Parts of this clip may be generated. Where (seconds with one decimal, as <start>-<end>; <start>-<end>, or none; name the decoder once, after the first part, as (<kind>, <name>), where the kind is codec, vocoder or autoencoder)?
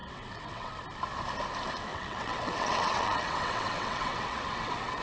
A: 0.0-0.8 (vocoder, WaveNeXt); 1.9-5.0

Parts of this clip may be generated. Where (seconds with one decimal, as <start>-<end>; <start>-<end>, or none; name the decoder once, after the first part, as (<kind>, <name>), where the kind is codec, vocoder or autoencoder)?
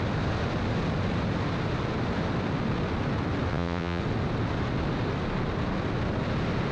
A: 3.5-4.0 (vocoder, WaveNeXt)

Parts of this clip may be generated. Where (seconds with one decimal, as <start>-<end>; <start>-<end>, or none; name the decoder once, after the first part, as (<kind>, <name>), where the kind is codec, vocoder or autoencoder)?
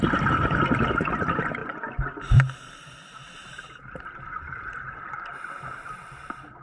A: none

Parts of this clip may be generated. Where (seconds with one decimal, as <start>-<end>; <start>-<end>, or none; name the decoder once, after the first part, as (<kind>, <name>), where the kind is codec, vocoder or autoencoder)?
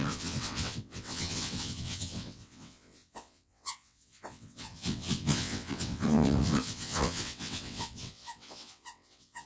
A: 0.0-9.5 (vocoder, WaveNeXt)